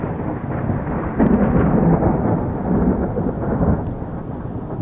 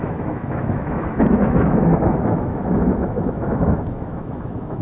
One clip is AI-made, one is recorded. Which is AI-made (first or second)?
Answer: second